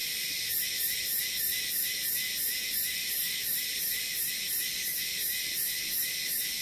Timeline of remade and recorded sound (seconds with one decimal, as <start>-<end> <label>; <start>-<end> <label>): 0.0-0.5 remade; 0.5-3.0 recorded; 3.0-4.3 remade; 4.3-6.6 recorded